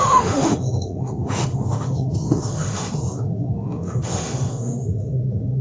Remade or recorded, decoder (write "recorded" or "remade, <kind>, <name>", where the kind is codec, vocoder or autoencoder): remade, autoencoder, DAC-VAE